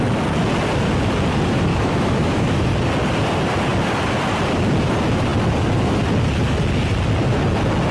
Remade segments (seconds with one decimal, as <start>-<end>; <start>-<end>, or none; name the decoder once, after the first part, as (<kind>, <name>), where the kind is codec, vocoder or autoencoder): 1.7-2.7 (autoencoder, DAC-VAE)